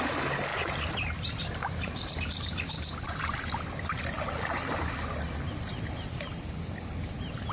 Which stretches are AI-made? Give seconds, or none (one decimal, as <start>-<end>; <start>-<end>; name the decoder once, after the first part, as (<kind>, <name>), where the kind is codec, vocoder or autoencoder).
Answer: 0.5-5.0 (vocoder, BigVGAN v2)